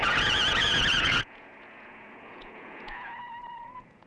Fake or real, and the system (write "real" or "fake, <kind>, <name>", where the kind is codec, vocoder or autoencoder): fake, vocoder, Vocos